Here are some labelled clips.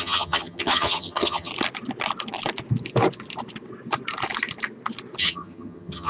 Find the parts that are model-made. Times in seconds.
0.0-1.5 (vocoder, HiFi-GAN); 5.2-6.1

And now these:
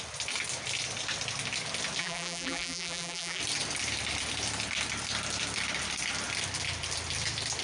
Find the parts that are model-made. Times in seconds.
2.0-3.4 (vocoder, BigVGAN v2)

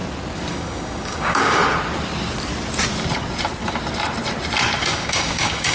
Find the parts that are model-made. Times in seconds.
0.5-1.6 (codec, DAC); 4.8-5.7

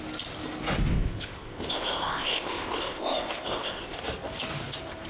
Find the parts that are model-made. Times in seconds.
0.9-4.0 (codec, ZipCodec)

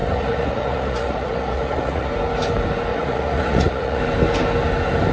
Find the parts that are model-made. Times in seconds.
0.0-2.1 (vocoder, Vocos); 2.9-4.0